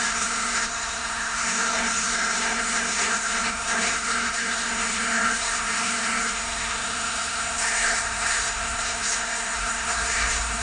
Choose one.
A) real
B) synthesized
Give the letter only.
B